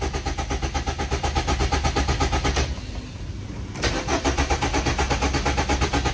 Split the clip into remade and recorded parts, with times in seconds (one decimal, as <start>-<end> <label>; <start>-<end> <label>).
0.0-6.1 recorded

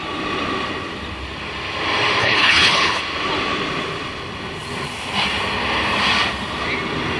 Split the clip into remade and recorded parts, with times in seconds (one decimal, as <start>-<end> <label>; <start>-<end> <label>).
0.0-2.2 recorded; 2.2-3.0 remade; 3.0-7.2 recorded

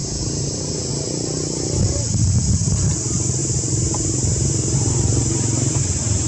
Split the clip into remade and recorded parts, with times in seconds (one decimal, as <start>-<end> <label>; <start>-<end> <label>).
0.0-0.9 remade; 0.9-3.4 recorded; 3.4-6.3 remade

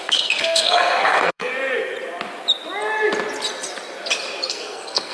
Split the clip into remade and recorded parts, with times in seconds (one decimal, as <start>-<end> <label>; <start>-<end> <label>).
0.0-1.5 remade; 1.5-4.5 recorded; 4.5-5.1 remade